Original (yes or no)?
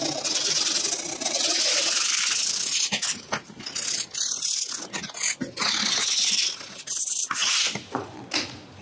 yes